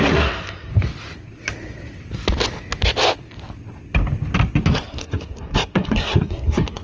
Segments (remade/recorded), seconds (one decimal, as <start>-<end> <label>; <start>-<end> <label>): 0.0-0.7 remade; 0.7-4.7 recorded; 4.7-6.8 remade